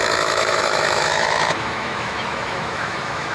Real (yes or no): no